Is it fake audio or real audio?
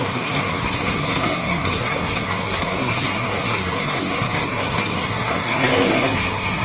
fake